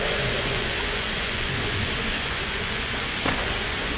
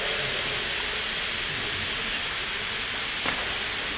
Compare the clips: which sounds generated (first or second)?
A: first